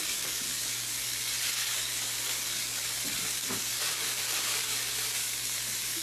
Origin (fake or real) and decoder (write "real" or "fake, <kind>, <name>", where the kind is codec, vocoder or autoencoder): fake, codec, DAC